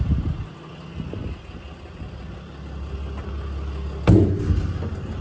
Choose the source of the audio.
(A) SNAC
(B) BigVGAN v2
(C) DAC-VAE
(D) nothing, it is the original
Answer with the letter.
D